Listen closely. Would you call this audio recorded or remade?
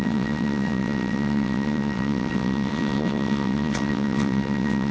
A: remade